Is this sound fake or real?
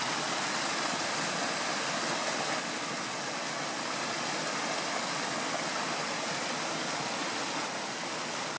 real